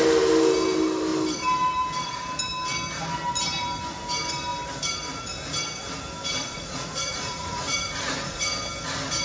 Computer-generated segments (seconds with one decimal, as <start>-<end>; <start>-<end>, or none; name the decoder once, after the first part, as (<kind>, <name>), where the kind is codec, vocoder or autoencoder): 6.4-8.5 (vocoder, Vocos)